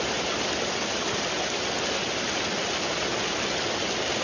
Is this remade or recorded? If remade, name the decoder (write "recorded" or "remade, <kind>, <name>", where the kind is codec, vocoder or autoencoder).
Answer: recorded